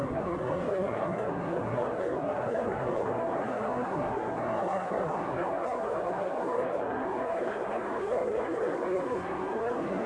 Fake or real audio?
fake